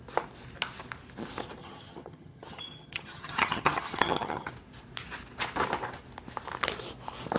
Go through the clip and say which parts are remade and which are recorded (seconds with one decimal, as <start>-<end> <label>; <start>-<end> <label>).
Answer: 0.0-1.6 recorded; 1.6-4.5 remade; 4.5-7.4 recorded